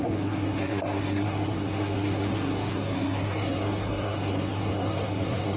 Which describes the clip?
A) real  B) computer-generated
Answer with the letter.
B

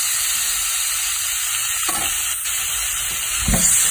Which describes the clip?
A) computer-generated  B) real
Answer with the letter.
B